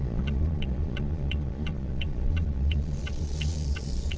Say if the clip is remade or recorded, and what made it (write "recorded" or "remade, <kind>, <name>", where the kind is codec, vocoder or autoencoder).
remade, vocoder, Vocos